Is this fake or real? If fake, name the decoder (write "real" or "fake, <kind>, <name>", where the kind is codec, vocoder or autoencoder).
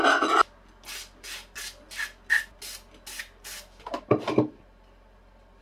real